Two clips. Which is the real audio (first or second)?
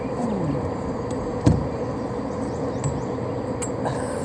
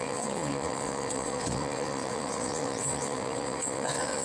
first